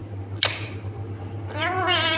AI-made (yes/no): yes